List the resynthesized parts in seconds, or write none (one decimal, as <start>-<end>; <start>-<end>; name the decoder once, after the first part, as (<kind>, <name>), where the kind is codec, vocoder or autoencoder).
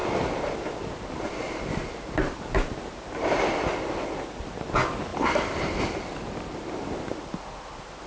5.1-5.8 (vocoder, BigVGAN v2)